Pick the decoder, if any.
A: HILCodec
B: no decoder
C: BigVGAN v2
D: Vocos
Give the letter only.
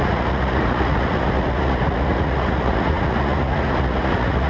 D